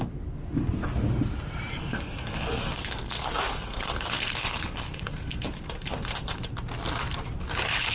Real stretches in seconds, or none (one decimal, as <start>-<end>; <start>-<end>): 0.0-1.8; 6.5-7.9